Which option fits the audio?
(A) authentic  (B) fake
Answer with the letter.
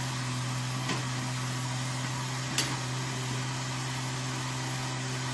A